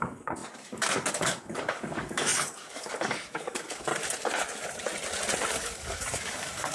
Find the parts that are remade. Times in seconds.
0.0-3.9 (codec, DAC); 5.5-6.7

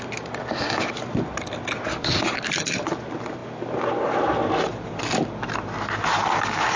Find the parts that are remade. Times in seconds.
none

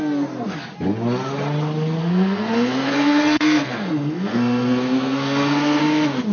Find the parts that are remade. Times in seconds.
2.0-5.8 (codec, SNAC)

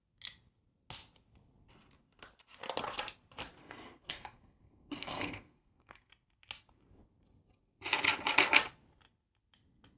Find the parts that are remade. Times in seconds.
3.6-6.1 (codec, SNAC)

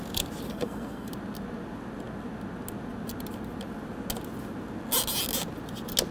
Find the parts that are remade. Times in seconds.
0.5-1.1 (codec, SNAC)

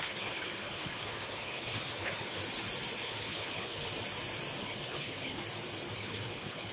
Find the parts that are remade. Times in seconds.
0.0-2.4 (codec, HILCodec); 3.0-3.9; 4.6-5.4; 6.0-6.7